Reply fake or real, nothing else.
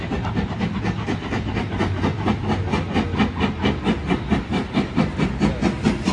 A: real